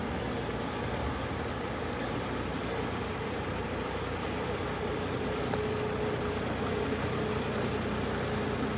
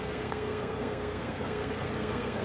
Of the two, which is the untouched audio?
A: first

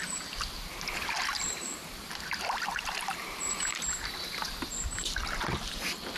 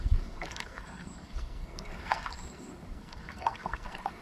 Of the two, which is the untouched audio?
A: first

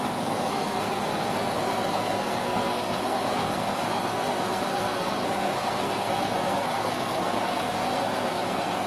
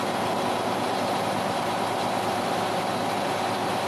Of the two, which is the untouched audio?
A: second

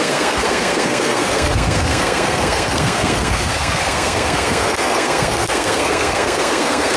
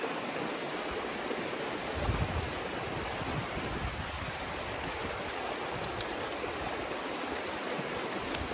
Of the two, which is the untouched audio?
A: second